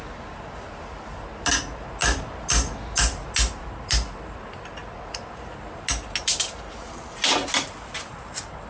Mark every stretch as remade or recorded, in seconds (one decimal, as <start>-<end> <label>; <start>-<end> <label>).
0.0-8.7 recorded